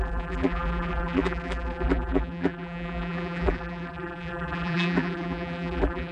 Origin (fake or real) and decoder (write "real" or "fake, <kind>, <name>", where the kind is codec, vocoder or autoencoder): fake, vocoder, BigVGAN v2